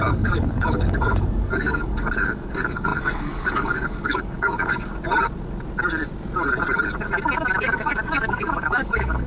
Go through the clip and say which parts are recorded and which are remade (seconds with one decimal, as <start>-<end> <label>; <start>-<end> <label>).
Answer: 0.0-4.9 remade; 4.9-7.6 recorded; 7.6-9.3 remade